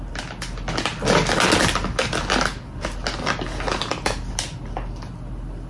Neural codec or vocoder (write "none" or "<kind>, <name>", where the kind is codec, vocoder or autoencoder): none